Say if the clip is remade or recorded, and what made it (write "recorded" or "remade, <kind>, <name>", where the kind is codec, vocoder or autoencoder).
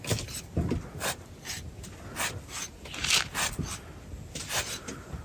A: recorded